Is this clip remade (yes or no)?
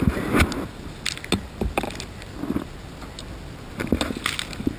no